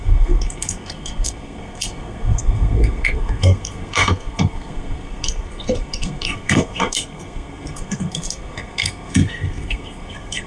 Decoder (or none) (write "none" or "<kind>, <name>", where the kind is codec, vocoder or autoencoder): codec, SNAC